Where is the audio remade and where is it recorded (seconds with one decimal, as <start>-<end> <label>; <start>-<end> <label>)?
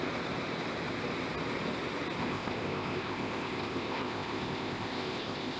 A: 0.0-2.2 recorded; 2.2-5.6 remade